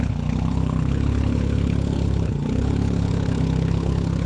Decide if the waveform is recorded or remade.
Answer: remade